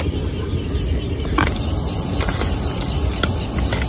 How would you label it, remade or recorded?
recorded